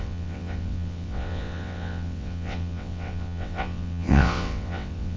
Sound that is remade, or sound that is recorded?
remade